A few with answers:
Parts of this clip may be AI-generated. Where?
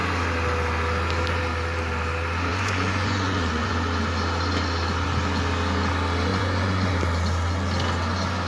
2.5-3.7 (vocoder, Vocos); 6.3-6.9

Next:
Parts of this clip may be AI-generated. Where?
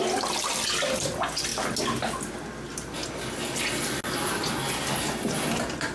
none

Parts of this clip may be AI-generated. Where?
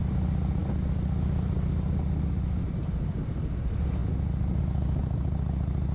none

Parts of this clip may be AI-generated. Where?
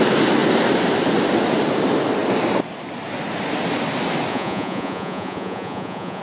4.3-6.2 (vocoder, Vocos)